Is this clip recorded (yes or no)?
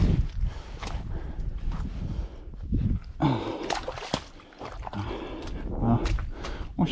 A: yes